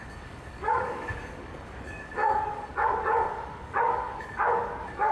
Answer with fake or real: fake